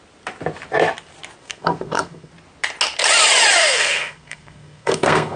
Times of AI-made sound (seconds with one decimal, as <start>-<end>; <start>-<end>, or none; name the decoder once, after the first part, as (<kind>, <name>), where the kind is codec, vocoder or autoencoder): 1.4-2.3 (codec, SNAC); 3.6-5.4